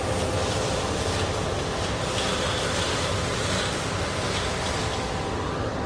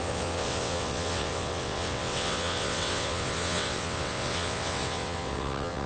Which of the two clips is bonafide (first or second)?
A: first